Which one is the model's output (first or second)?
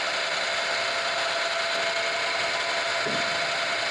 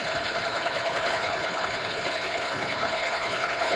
second